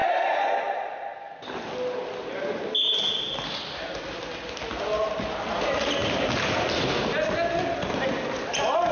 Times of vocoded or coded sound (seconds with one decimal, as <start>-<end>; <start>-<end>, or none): none